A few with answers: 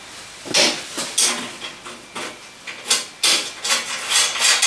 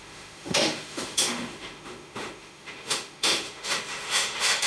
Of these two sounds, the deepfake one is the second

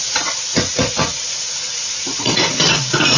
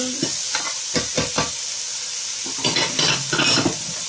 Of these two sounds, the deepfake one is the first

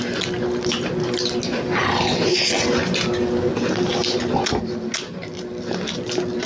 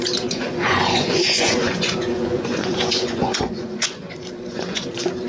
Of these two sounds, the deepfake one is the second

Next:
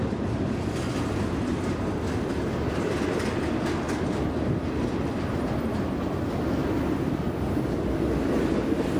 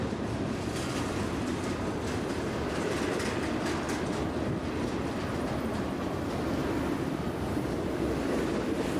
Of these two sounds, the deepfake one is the second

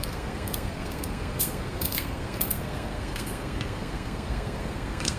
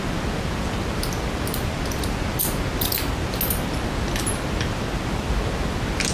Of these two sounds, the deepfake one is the first